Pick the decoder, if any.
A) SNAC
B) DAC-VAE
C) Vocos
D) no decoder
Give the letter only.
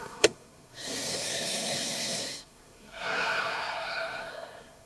A